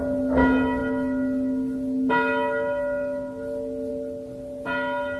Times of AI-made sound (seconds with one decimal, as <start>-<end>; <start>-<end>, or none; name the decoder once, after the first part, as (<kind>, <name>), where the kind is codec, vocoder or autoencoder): none